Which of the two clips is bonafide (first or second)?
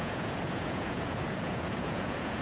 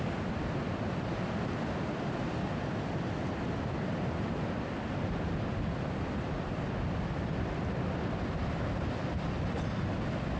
second